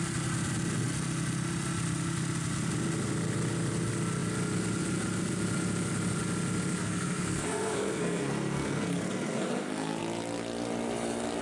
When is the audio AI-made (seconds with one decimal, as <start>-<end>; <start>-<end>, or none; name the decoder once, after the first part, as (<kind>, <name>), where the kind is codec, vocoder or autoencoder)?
6.8-10.0 (codec, SNAC)